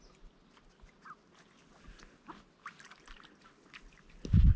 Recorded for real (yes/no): yes